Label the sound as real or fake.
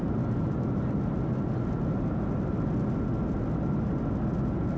real